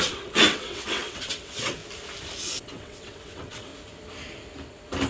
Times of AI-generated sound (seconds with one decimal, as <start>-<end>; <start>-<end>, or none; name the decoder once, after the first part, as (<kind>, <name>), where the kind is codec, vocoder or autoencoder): 0.0-1.8 (vocoder, WaveNeXt); 2.4-3.7